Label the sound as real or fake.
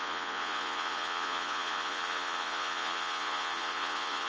fake